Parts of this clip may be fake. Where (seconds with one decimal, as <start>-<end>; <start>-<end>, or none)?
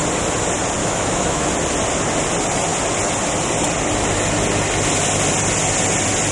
0.8-1.5